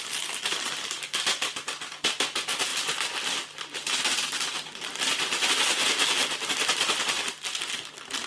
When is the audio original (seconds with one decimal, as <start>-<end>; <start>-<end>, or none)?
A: 0.0-8.3

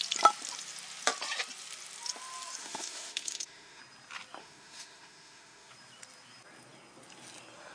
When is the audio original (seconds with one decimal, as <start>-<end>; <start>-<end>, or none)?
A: 0.0-2.6; 3.8-4.4; 5.7-7.7